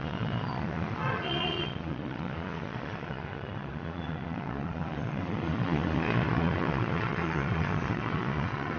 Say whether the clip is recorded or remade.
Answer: remade